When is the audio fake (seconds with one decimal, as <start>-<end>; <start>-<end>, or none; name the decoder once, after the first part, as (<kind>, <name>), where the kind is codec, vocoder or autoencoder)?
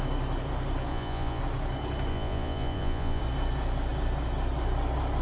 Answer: 0.9-1.4 (vocoder, Vocos); 2.1-3.2